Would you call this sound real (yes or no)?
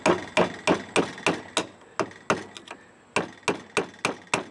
yes